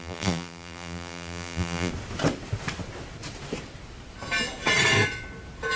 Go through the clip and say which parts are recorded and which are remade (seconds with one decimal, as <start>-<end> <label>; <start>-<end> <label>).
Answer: 0.0-1.9 remade; 1.9-5.8 recorded